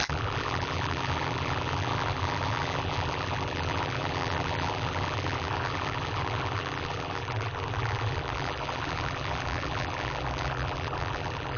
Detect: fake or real fake